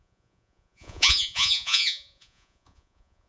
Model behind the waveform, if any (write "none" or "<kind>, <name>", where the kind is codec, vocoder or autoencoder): vocoder, Vocos